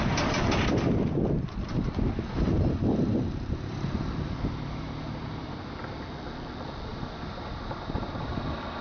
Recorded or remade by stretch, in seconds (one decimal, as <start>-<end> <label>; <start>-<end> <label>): 0.0-3.1 recorded; 3.1-5.5 remade; 5.5-6.9 recorded; 6.9-8.4 remade; 8.4-8.8 recorded